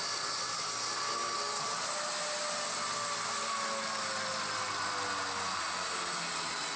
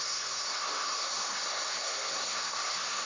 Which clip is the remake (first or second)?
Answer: second